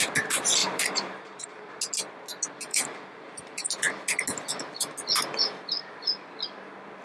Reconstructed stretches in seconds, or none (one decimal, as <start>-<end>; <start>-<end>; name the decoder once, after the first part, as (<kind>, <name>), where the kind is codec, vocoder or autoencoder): 0.6-1.7 (vocoder, BigVGAN v2); 2.7-3.8